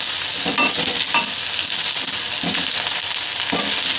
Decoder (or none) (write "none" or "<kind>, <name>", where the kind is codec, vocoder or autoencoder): none